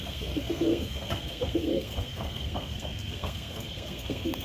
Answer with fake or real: fake